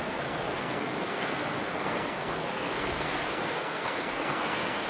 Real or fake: fake